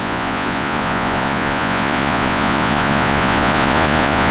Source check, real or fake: fake